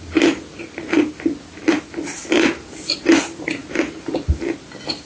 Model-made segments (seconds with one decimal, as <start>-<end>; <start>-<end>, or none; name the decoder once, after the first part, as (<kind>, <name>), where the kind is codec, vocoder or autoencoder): none